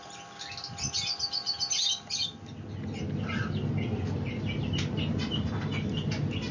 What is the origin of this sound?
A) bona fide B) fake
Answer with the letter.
A